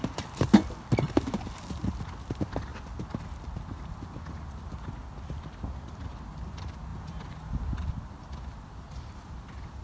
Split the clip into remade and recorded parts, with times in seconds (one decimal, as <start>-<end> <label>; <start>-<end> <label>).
0.0-9.8 recorded